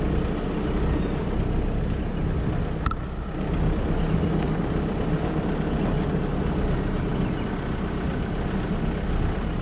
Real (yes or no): yes